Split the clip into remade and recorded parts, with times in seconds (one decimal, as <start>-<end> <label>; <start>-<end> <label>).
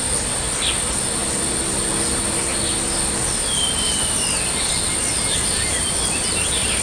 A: 0.0-6.8 recorded